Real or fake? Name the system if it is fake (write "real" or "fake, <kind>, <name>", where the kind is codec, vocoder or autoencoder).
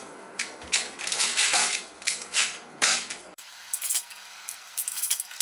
fake, codec, SNAC